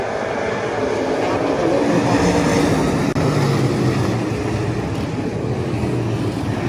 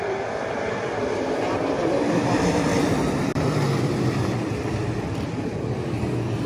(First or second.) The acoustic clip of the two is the first